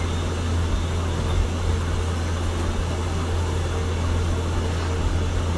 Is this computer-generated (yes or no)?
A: no